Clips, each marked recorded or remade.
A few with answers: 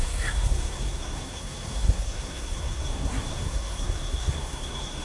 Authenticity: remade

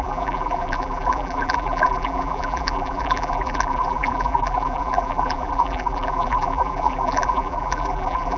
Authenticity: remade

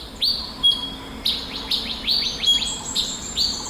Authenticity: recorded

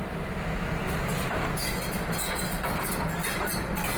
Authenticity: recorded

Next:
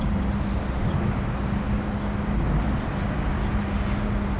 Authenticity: recorded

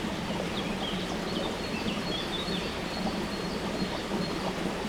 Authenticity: recorded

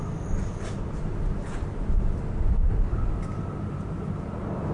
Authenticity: remade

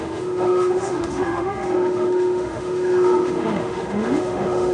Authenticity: remade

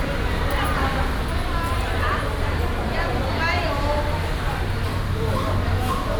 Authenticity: recorded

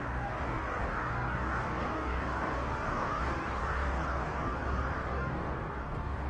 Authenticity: remade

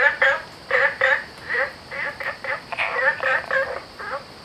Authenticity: remade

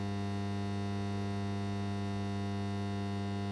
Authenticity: recorded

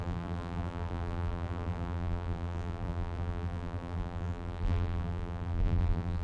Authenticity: remade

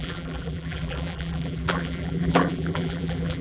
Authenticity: remade